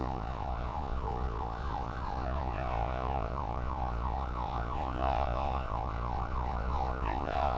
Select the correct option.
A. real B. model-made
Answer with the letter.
B